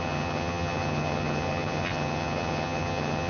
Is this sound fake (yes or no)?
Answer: yes